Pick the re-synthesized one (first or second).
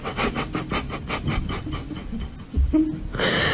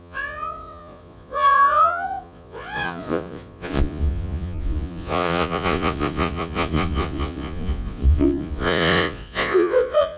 second